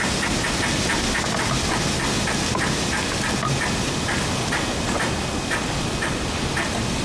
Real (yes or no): yes